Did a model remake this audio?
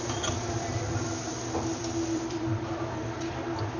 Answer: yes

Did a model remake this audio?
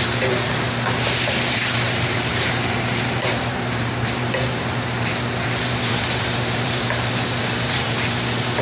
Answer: yes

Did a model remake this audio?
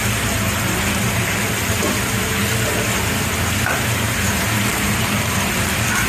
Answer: yes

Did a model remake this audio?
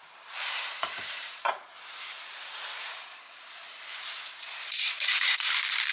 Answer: yes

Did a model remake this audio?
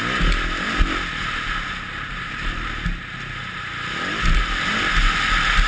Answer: no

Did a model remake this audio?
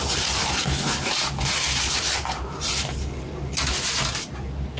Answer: no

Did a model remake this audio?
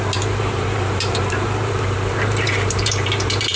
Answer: yes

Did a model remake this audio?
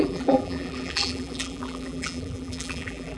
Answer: yes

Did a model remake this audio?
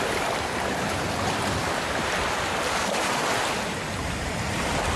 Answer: yes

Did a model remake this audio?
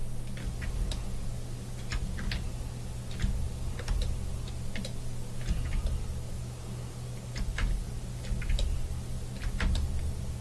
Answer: no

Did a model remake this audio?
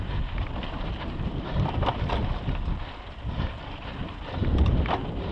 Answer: yes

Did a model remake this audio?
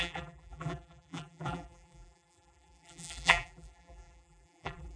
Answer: yes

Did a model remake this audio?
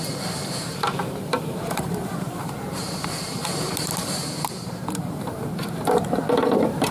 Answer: yes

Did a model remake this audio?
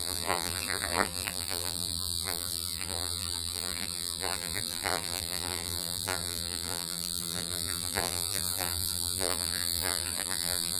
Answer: yes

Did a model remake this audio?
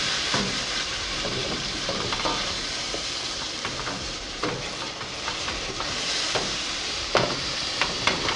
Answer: yes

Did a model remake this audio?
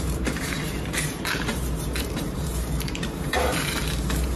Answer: yes